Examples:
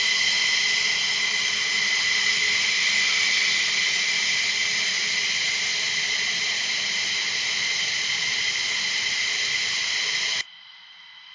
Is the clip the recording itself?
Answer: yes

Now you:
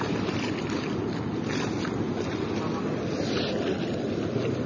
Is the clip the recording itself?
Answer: yes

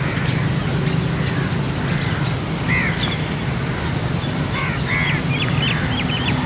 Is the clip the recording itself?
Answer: yes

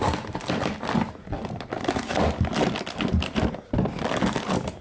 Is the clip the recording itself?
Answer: yes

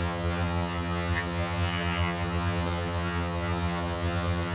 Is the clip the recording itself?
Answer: no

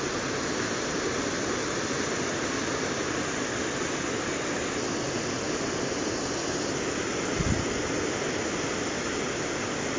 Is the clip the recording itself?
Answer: yes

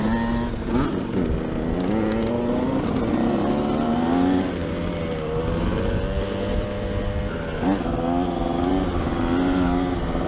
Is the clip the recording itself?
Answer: yes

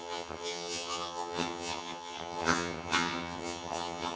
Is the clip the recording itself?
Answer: no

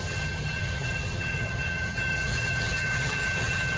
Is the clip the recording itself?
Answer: no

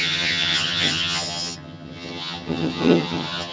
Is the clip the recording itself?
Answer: no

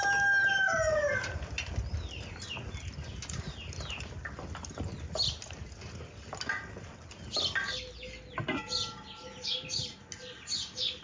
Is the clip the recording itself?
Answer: yes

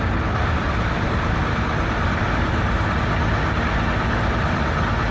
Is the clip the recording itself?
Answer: yes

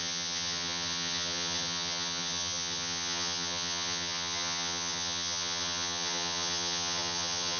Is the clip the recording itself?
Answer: no